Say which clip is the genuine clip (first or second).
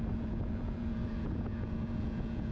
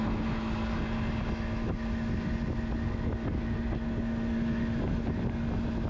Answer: second